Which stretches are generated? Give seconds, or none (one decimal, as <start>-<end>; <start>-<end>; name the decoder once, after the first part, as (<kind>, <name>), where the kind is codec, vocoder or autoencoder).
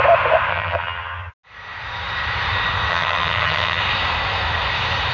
0.5-1.3 (vocoder, HiFi-GAN); 2.9-3.8